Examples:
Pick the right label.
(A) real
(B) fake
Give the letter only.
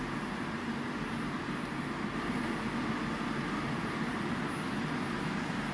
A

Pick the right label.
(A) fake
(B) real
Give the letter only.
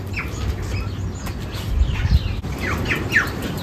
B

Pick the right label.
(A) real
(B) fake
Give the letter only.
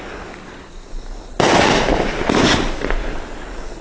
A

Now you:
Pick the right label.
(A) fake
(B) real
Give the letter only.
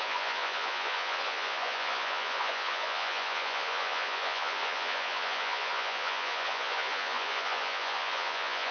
A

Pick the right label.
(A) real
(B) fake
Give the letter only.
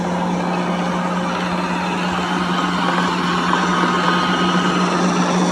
A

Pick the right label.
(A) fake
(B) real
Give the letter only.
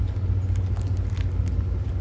B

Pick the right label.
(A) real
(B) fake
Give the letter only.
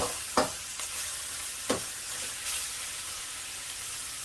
A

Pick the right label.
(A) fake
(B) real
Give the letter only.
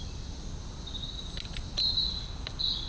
B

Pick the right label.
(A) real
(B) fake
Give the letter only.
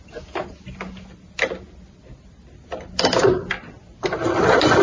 A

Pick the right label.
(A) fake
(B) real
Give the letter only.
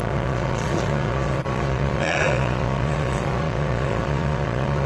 A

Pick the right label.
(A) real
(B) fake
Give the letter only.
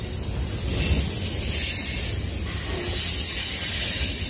A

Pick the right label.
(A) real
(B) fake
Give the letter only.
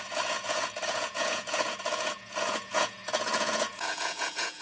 B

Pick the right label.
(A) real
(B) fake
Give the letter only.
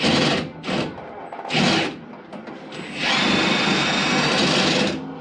A